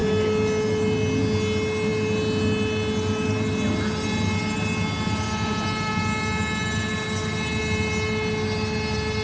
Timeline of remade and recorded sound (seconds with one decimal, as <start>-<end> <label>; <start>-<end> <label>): 0.0-9.2 recorded